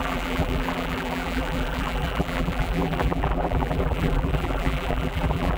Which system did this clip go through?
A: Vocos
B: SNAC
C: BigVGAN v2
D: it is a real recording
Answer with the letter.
C